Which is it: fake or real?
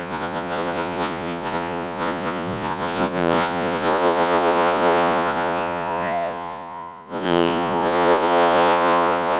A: fake